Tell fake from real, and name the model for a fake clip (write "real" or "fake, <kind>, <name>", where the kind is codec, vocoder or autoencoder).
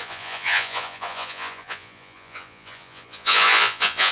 fake, vocoder, Vocos